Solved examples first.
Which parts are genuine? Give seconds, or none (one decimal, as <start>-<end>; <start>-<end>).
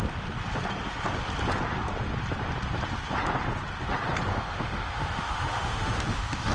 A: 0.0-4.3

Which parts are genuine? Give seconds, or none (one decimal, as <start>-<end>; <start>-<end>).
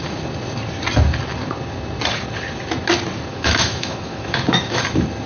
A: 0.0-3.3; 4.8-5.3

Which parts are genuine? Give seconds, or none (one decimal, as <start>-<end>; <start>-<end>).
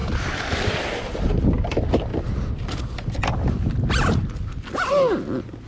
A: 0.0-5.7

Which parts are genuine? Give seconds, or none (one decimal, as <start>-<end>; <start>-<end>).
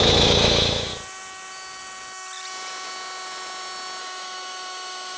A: 0.9-4.0